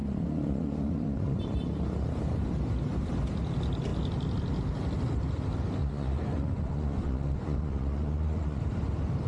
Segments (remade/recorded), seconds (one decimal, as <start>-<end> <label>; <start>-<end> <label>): 0.0-1.4 remade; 1.4-5.8 recorded; 5.8-8.6 remade; 8.6-9.3 recorded